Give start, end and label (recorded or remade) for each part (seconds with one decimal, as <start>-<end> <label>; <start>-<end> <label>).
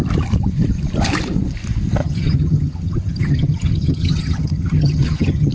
0.0-2.0 recorded; 2.0-5.5 remade